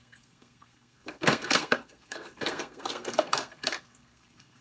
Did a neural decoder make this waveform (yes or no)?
yes